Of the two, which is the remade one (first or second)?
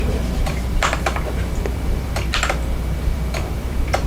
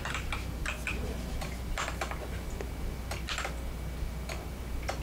first